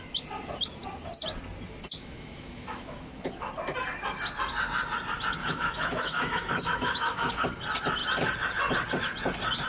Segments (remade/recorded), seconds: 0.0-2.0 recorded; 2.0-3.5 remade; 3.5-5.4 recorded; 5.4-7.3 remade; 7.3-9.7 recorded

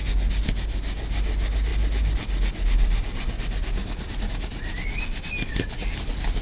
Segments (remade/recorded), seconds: 0.0-6.4 recorded